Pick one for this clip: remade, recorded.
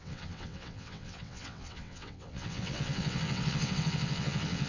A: remade